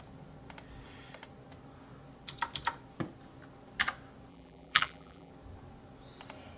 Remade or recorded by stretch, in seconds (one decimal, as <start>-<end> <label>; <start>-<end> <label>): 0.0-4.3 recorded; 4.3-5.3 remade; 5.3-6.6 recorded